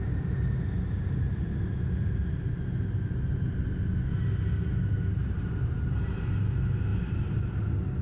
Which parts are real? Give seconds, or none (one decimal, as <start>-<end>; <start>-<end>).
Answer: 0.0-5.2; 6.3-6.9; 7.4-8.0